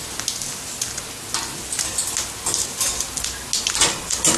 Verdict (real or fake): real